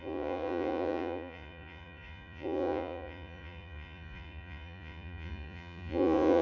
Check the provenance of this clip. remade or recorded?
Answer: remade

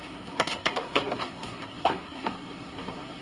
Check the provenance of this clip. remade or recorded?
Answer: remade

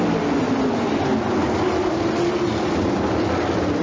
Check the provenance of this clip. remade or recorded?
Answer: recorded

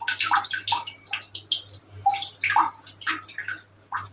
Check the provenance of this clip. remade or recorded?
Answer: recorded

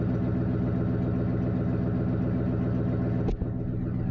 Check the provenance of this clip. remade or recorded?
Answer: recorded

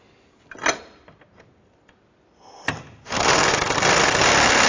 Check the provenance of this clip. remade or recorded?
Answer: recorded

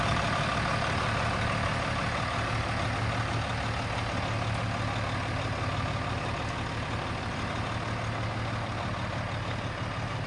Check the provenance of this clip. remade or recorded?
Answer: recorded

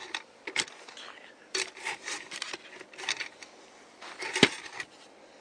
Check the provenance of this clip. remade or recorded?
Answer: recorded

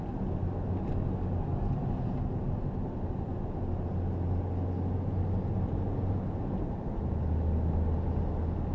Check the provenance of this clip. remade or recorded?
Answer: recorded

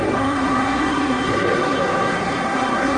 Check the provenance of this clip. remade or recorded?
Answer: remade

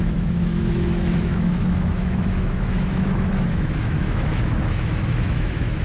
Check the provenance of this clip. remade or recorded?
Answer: remade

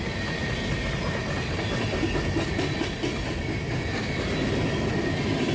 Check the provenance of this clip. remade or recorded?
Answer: recorded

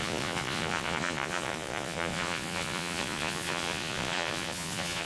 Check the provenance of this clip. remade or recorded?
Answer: remade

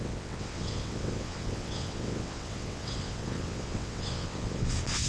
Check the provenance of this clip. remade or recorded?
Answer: remade